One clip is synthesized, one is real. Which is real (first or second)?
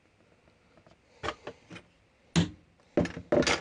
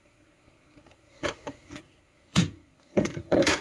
first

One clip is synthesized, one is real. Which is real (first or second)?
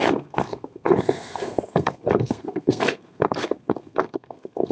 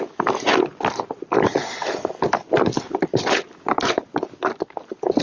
second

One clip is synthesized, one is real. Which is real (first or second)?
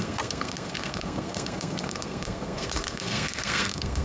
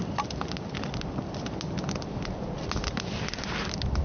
second